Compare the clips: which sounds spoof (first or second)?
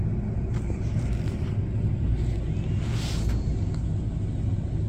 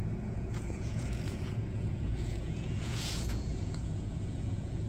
second